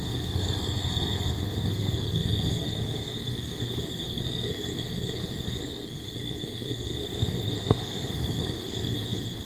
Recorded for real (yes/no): no